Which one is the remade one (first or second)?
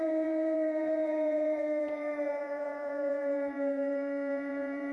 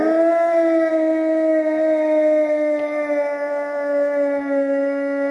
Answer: first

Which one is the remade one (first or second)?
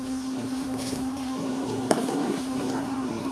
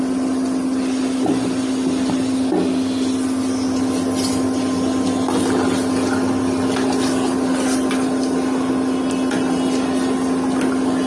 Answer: first